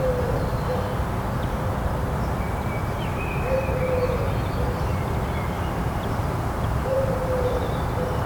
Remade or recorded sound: remade